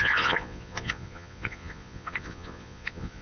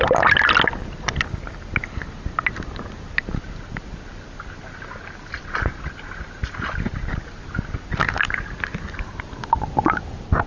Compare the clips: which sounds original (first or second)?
second